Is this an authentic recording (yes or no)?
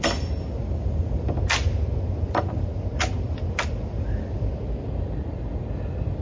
yes